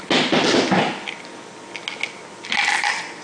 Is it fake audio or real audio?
real